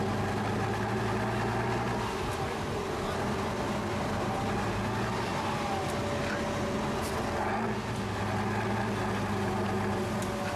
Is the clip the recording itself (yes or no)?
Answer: yes